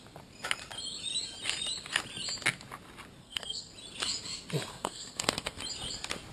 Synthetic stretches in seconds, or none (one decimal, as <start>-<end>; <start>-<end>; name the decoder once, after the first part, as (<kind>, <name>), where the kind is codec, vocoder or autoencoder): 3.2-3.7 (codec, SNAC); 4.7-5.6